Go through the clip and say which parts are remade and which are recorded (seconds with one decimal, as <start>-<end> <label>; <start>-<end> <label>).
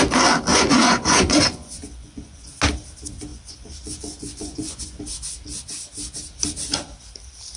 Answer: 0.0-0.5 recorded; 0.5-2.5 remade; 2.5-3.3 recorded; 3.3-5.0 remade; 5.0-7.6 recorded